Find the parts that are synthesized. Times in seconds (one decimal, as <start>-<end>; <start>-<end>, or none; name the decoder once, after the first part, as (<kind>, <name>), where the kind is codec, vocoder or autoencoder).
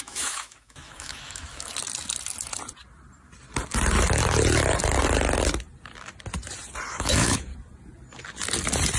0.0-1.7 (autoencoder, DAC-VAE); 6.9-7.5